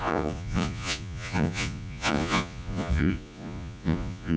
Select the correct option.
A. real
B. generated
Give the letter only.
B